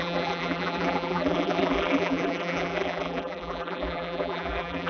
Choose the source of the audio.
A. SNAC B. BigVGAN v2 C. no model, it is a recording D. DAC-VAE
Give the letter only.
B